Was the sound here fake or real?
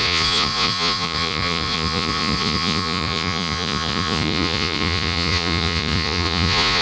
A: fake